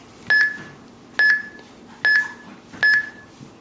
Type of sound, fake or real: real